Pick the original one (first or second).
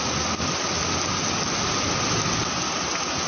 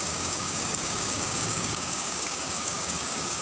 first